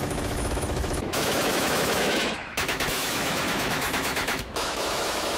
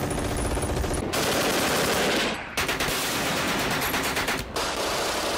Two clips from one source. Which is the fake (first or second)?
first